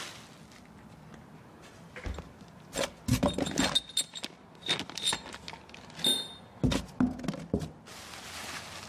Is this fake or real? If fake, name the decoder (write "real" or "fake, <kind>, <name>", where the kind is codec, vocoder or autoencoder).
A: real